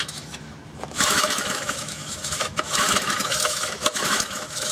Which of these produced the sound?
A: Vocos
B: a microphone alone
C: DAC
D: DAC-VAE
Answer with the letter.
D